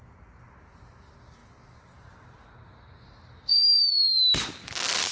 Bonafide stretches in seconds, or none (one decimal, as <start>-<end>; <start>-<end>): 0.0-5.1